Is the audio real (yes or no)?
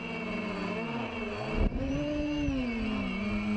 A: yes